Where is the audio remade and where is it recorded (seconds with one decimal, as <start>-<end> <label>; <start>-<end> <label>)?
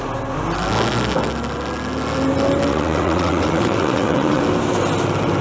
0.0-2.7 recorded; 2.7-4.4 remade; 4.4-5.4 recorded